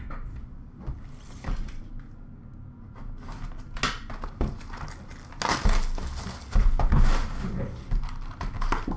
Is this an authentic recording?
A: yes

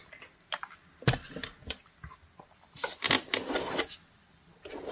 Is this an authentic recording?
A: yes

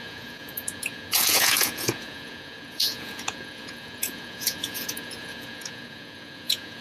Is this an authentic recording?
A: no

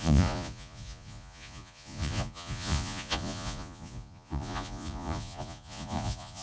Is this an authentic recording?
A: no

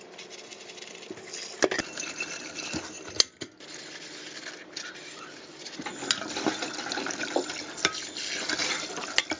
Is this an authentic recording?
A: yes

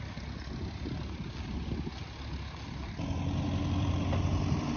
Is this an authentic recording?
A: yes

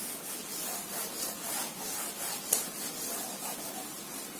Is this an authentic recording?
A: yes